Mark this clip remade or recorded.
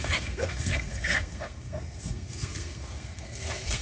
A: remade